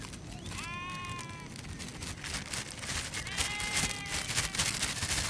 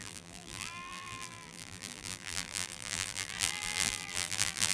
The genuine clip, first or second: first